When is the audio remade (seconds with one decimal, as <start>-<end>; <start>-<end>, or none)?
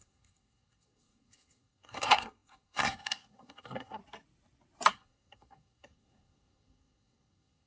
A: 0.0-4.0; 4.9-7.7